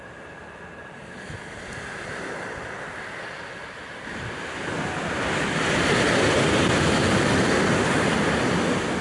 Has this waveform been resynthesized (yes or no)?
no